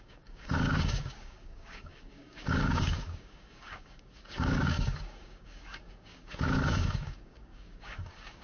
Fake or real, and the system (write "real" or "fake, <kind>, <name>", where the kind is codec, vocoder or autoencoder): fake, codec, DAC